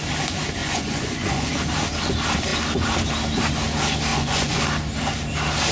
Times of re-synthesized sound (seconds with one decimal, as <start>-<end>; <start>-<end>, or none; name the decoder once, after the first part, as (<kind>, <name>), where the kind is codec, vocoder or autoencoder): 0.6-1.5 (vocoder, Vocos); 4.1-4.6

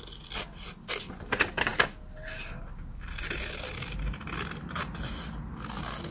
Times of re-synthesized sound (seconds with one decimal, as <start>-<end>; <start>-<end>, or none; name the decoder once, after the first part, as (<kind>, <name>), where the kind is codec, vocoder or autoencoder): none

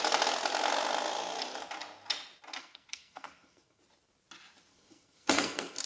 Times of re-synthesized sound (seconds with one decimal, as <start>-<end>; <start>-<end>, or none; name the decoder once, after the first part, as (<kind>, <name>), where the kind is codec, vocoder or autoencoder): 2.6-3.8 (codec, SNAC); 4.7-5.9

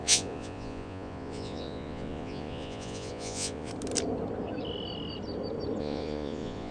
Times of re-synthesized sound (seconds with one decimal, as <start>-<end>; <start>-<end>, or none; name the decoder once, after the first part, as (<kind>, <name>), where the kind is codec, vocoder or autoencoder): 0.0-3.7 (vocoder, Vocos); 5.8-6.7

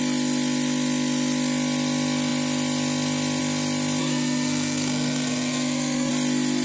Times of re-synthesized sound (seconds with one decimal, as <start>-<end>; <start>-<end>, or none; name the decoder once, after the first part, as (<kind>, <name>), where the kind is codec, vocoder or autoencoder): 4.0-6.1 (codec, SNAC)